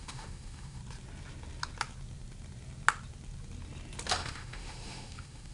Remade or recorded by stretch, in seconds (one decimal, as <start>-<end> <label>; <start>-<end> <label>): 0.0-0.8 remade; 0.8-4.1 recorded; 4.1-5.5 remade